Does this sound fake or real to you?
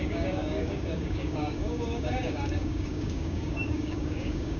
fake